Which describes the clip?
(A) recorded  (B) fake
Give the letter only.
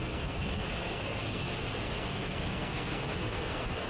B